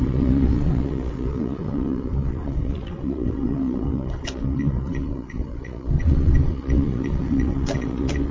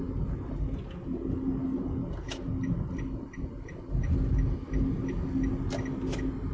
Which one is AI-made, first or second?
first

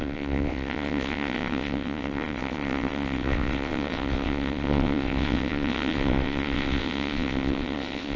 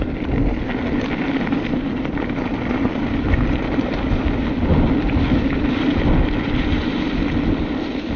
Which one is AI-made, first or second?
first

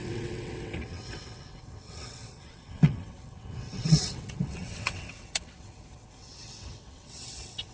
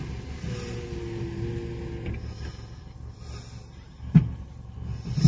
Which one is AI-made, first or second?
first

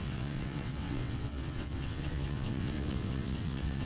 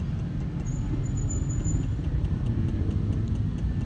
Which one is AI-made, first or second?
first